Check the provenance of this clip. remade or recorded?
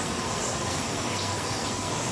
remade